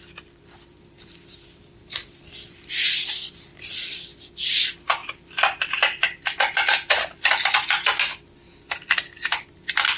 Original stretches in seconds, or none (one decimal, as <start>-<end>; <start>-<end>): 3.7-4.3; 7.3-9.4